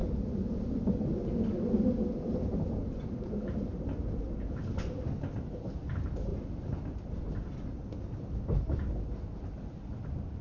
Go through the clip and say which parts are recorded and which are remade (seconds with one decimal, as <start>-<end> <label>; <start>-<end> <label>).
0.0-4.4 remade; 4.4-6.3 recorded; 6.3-7.2 remade; 7.2-10.4 recorded